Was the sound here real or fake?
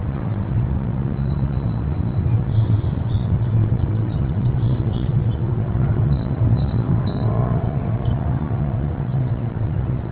fake